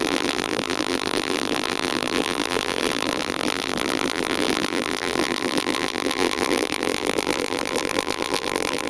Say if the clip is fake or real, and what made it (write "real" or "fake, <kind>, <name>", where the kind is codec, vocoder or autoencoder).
fake, vocoder, BigVGAN v2